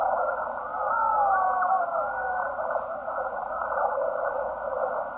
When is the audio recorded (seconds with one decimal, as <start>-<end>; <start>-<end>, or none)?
0.7-1.8

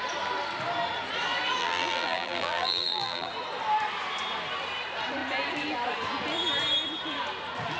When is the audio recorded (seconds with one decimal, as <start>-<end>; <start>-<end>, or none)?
0.0-1.6; 3.3-7.8

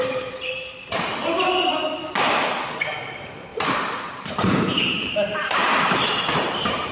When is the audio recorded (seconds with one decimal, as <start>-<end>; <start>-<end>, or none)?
0.0-3.5

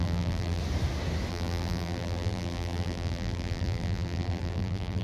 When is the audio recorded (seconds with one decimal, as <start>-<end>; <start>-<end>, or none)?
0.6-1.3

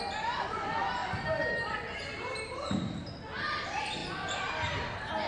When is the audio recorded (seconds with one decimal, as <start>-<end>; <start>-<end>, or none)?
0.0-1.0; 2.7-5.3

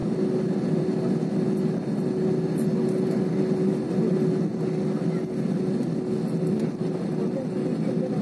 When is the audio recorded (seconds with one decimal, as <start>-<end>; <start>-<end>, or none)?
0.0-8.2